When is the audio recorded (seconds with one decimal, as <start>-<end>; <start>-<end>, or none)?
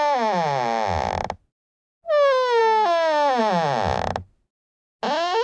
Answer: 0.0-5.4